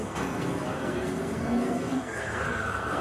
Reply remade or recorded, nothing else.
remade